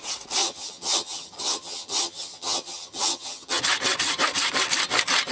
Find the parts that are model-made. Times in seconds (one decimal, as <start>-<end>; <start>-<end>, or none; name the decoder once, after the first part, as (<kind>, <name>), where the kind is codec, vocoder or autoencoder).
0.4-3.6 (vocoder, HiFi-GAN)